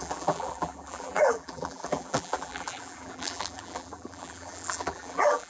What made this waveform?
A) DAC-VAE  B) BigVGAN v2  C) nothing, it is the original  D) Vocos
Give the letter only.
B